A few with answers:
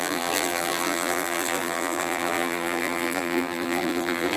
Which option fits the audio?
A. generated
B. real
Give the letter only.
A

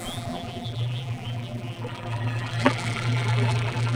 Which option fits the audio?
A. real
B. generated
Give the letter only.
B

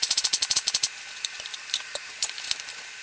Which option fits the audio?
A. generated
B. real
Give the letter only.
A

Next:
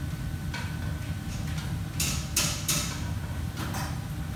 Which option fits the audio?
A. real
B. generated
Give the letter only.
A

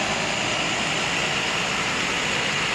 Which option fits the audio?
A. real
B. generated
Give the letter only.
A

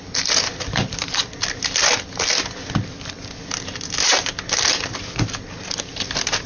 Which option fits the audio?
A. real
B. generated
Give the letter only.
A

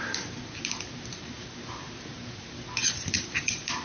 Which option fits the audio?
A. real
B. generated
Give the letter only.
B